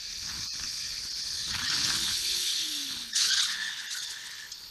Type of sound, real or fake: fake